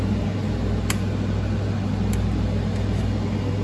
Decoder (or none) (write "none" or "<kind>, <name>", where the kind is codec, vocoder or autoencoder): none